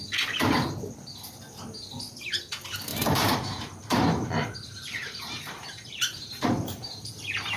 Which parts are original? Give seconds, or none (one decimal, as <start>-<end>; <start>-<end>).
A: 0.0-2.9; 7.1-7.6